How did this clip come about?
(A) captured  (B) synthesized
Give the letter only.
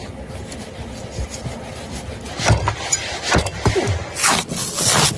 A